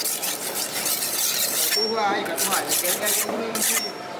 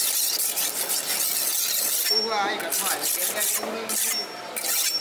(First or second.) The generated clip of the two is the first